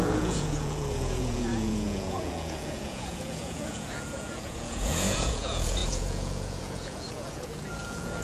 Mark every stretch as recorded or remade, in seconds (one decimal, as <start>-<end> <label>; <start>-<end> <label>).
0.0-8.2 remade